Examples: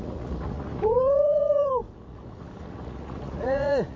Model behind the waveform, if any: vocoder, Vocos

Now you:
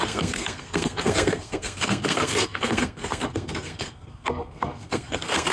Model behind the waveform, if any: codec, SNAC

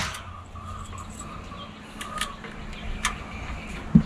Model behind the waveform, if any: none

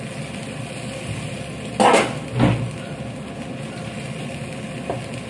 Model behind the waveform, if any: none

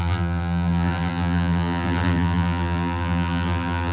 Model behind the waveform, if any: vocoder, BigVGAN v2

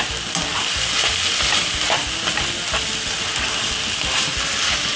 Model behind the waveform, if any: none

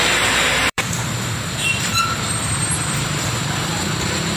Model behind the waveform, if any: vocoder, BigVGAN v2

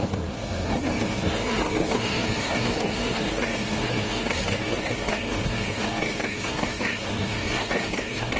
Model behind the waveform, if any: codec, SNAC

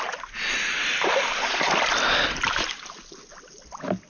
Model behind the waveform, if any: none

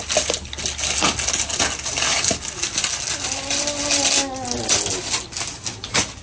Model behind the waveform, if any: none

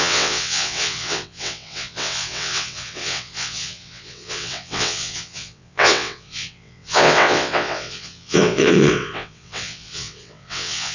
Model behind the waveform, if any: vocoder, WaveNeXt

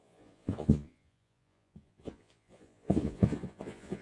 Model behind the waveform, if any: vocoder, Vocos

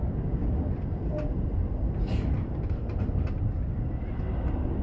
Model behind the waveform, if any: none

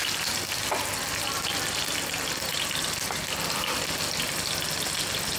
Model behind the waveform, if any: none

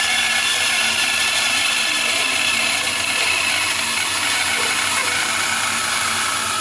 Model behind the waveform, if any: none